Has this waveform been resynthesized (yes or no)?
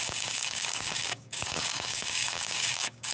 yes